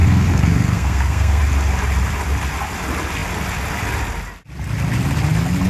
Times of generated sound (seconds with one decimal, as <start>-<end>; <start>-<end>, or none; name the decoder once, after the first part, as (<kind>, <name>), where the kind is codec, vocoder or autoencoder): 0.0-1.4 (codec, SNAC)